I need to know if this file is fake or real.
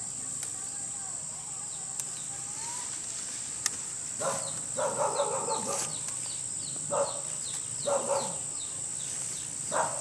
real